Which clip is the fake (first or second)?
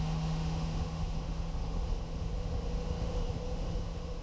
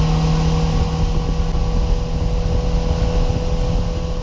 first